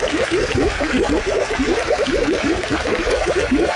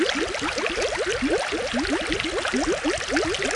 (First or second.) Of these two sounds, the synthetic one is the first